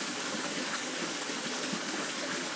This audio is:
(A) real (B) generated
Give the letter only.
B